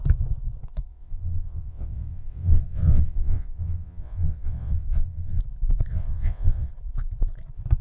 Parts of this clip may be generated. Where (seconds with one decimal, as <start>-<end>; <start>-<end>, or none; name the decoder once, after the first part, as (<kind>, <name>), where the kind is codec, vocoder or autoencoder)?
0.9-5.4 (vocoder, WaveNeXt); 5.9-6.7